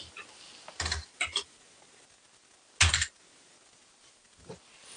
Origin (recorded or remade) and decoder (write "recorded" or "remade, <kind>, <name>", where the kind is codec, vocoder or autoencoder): recorded